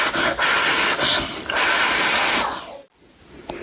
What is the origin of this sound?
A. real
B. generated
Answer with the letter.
A